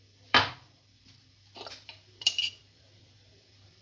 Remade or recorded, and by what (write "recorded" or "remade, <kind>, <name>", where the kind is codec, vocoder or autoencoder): remade, vocoder, BigVGAN v2